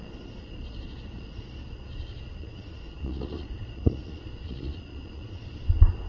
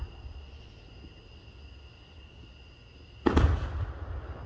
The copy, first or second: first